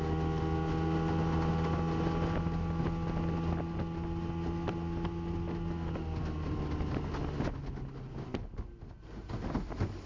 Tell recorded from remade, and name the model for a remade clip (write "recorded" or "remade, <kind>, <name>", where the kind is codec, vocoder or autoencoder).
recorded